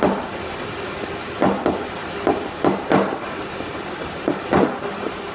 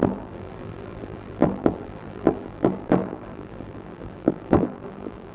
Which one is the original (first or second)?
first